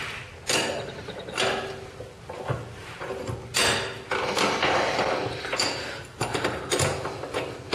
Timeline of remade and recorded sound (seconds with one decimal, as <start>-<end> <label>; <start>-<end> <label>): 0.0-7.7 recorded